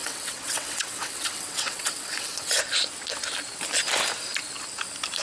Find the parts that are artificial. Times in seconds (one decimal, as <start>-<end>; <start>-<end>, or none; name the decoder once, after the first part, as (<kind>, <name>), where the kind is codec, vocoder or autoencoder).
0.0-2.6 (vocoder, WaveNeXt)